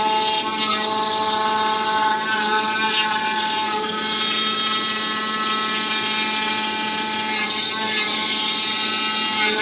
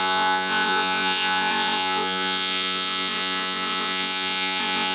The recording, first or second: first